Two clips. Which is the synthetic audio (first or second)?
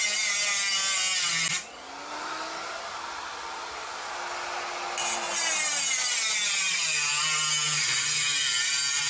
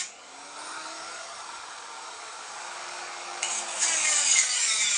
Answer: second